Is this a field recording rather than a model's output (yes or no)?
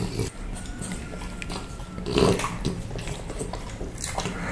yes